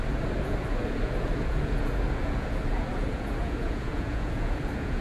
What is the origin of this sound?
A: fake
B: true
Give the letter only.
A